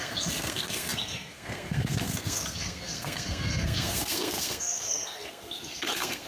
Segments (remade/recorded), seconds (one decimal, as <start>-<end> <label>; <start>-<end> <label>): 0.0-6.3 remade